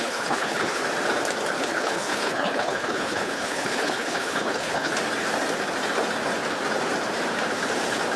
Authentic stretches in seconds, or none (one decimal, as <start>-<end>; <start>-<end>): 0.8-1.6; 4.9-8.2